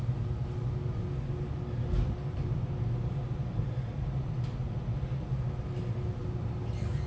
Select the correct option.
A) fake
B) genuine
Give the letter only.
B